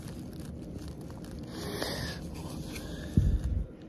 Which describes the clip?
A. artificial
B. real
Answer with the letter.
B